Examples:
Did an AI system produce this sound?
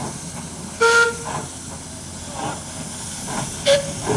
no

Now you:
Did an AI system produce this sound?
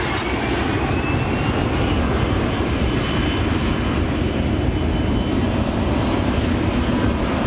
no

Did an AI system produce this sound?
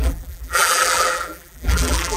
yes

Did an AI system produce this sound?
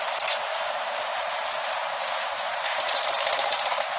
yes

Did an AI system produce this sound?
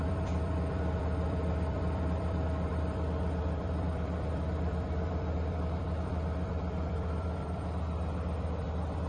yes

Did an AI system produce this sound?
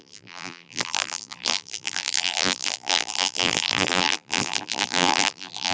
yes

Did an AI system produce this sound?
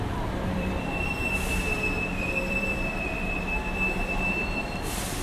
yes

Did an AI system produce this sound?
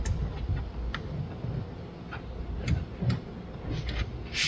no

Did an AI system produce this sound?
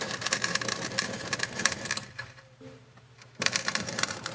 yes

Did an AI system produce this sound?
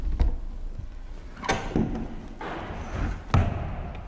no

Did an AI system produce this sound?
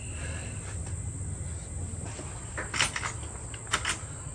no